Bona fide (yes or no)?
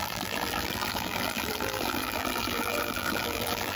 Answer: no